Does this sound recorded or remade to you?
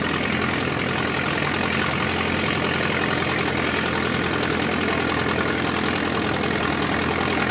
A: recorded